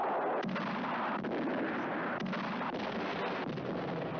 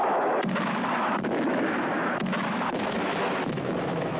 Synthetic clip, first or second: second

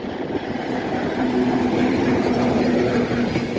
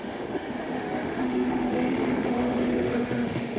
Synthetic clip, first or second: second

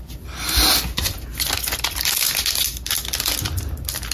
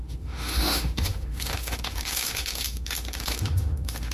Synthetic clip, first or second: second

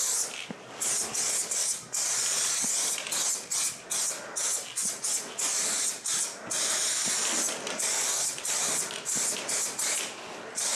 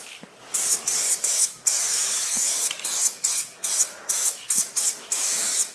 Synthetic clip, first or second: second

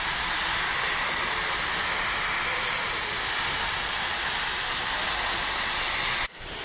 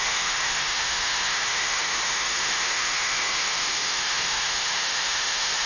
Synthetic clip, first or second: second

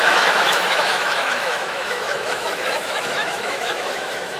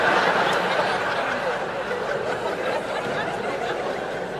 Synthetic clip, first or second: first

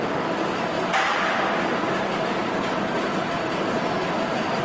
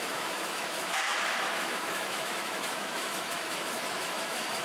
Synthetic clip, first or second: second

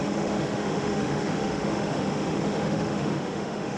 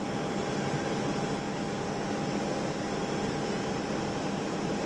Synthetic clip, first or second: first